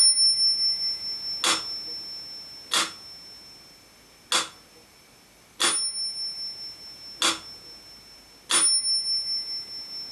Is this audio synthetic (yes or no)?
no